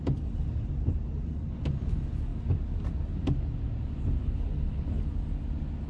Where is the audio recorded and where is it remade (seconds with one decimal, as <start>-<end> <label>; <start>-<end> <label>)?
0.0-4.2 recorded; 4.2-5.0 remade; 5.0-5.9 recorded